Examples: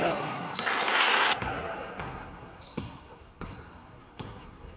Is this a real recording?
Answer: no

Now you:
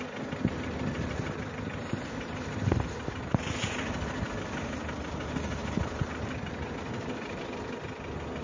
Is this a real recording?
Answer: yes